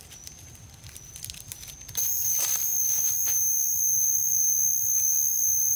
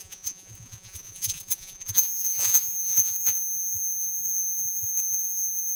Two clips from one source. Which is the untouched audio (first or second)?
first